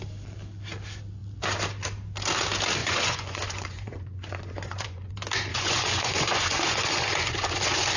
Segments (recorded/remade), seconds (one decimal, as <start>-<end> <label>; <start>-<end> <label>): 0.0-2.8 recorded; 2.8-5.1 remade; 5.1-5.5 recorded; 5.5-8.0 remade